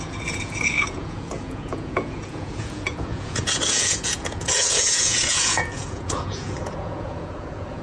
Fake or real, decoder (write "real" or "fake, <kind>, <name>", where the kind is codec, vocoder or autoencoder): fake, vocoder, Vocos